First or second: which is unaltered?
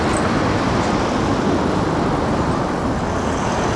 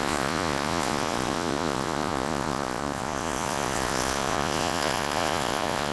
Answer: first